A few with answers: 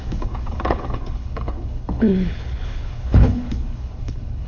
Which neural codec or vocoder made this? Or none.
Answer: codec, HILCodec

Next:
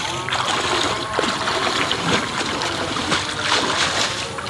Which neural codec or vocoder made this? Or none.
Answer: none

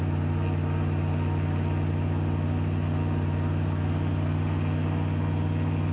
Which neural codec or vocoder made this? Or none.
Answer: none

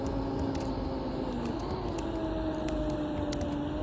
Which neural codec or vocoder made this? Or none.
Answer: none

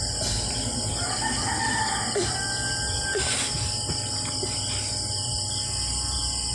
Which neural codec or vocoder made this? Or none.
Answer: none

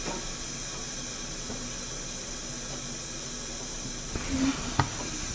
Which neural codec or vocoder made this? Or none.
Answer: none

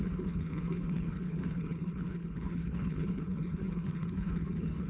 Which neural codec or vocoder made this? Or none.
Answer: codec, HILCodec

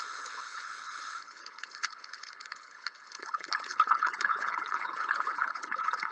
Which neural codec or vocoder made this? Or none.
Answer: codec, HILCodec